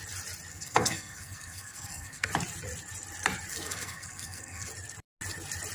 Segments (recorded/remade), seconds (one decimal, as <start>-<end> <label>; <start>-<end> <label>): 0.0-0.5 recorded; 0.5-2.3 remade; 2.3-3.5 recorded; 3.5-4.7 remade; 4.7-5.7 recorded